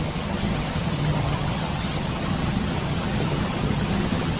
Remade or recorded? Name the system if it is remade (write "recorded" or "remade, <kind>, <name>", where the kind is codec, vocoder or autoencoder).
remade, vocoder, HiFi-GAN